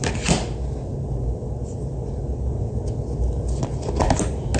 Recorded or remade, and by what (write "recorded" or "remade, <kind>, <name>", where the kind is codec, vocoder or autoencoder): recorded